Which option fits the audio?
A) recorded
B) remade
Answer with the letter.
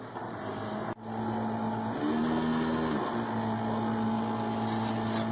A